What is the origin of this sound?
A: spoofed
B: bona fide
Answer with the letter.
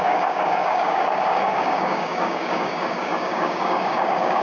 A